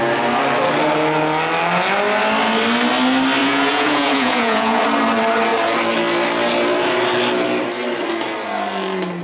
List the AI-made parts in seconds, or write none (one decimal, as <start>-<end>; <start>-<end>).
3.4-4.8